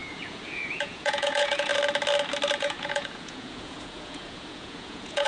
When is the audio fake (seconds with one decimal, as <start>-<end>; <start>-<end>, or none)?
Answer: 0.0-1.7; 2.6-5.3